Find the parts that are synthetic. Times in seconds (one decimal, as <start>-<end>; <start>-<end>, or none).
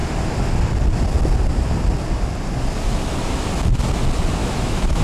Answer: 4.4-5.0